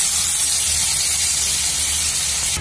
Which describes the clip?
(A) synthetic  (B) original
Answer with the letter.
B